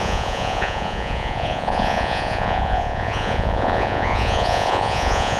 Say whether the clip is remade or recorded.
remade